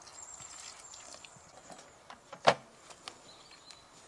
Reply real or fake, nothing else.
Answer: real